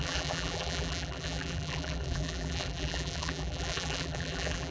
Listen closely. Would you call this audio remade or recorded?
remade